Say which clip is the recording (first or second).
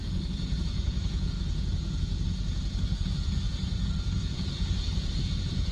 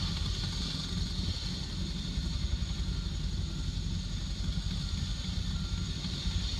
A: second